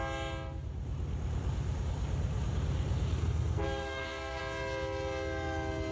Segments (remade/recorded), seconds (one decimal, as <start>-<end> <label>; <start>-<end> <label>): 0.0-3.2 recorded; 3.2-4.4 remade; 4.4-5.9 recorded